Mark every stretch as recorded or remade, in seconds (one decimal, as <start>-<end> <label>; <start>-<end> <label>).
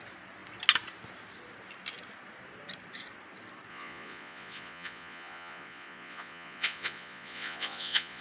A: 0.0-3.7 recorded; 3.7-8.2 remade